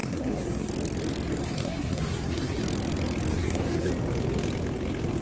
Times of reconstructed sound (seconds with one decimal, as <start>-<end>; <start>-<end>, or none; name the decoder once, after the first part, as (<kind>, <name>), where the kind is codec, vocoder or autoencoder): 0.0-0.7 (codec, SNAC); 1.4-2.6; 3.3-3.9